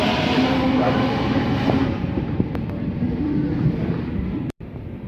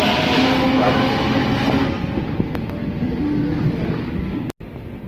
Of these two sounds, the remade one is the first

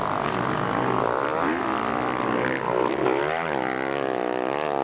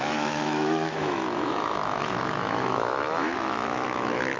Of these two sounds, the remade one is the second